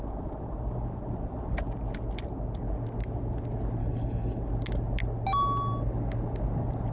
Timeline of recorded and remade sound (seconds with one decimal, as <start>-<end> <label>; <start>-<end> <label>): 0.0-3.8 recorded; 3.8-4.4 remade; 4.4-6.9 recorded